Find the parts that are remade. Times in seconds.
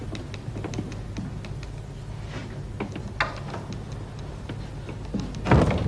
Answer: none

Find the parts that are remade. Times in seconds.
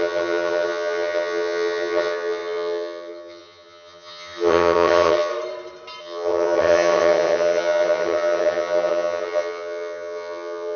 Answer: 0.0-5.3 (vocoder, HiFi-GAN); 6.0-10.8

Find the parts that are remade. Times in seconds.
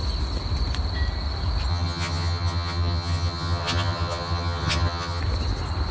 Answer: 1.7-5.2 (vocoder, HiFi-GAN)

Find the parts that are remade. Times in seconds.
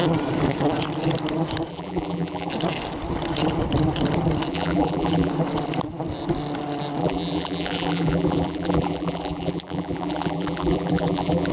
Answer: 1.7-2.5 (vocoder, BigVGAN v2); 4.5-5.3; 7.0-11.5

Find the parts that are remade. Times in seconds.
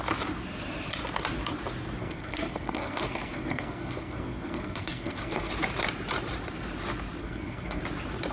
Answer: 2.0-5.5 (codec, SNAC); 7.2-7.8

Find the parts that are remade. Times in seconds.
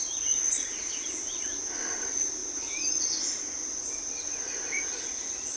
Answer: none